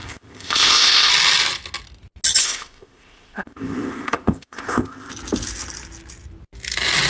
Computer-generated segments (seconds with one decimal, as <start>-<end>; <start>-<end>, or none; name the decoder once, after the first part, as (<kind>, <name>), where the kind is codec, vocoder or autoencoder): 0.0-1.1 (codec, ZipCodec); 2.4-5.1